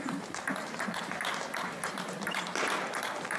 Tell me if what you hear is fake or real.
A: fake